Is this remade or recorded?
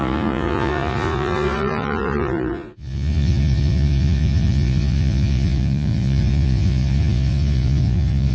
remade